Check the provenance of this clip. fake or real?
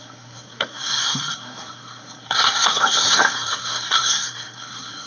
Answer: fake